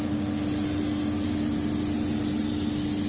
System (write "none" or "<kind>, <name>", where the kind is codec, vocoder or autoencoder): none